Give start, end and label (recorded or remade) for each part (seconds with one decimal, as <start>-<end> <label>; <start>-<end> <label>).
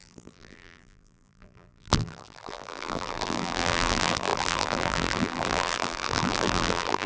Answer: 0.0-7.1 remade